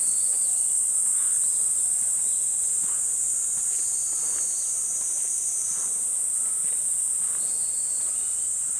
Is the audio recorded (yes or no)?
yes